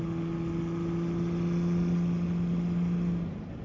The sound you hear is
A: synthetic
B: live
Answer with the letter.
B